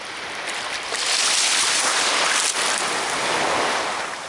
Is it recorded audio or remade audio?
recorded